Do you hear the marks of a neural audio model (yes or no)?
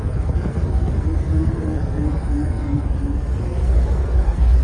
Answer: yes